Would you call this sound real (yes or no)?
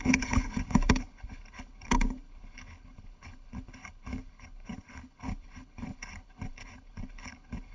no